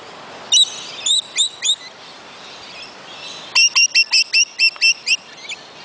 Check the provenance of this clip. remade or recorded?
recorded